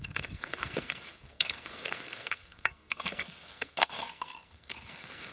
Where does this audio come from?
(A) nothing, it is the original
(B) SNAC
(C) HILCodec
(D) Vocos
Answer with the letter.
B